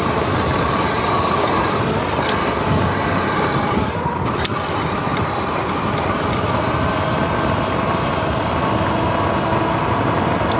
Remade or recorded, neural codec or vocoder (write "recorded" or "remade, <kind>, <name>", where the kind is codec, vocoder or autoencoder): recorded